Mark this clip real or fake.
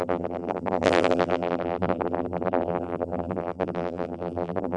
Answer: fake